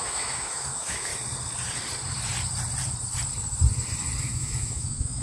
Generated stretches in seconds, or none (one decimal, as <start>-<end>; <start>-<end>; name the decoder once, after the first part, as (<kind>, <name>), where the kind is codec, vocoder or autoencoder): 0.0-1.1 (autoencoder, DAC-VAE); 4.2-5.2